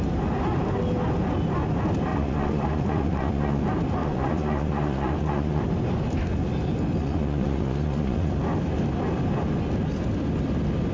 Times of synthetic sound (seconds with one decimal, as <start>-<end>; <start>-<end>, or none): 2.1-3.6; 4.0-5.6; 7.0-8.3